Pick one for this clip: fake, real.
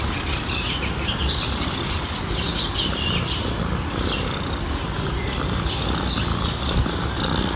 real